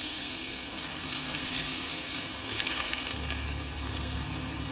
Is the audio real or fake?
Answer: fake